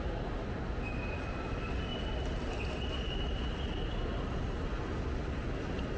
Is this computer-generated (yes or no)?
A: no